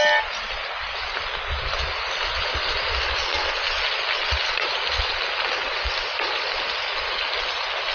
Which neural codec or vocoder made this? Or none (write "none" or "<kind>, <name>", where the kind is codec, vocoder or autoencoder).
none